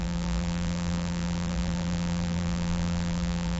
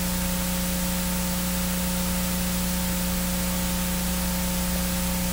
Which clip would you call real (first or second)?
second